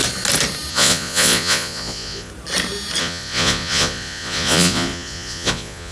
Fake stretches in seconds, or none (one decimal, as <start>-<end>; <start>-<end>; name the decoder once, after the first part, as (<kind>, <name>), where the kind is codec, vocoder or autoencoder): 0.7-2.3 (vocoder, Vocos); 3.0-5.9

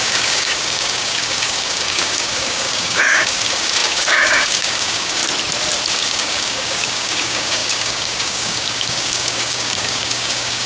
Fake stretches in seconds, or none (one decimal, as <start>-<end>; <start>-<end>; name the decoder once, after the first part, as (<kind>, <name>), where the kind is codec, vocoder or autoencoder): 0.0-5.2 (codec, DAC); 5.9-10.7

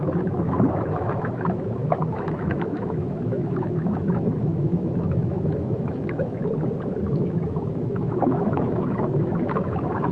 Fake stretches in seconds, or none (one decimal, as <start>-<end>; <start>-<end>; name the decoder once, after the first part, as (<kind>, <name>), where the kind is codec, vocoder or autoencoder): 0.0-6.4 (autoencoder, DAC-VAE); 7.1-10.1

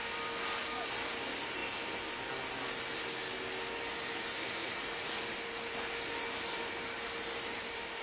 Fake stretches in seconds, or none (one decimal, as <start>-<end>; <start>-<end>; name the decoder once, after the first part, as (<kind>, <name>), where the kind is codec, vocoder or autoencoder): 4.6-5.2 (vocoder, Vocos)